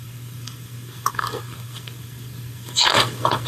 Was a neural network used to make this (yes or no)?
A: yes